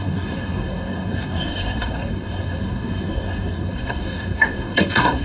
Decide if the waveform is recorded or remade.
remade